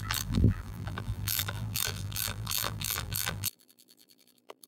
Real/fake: fake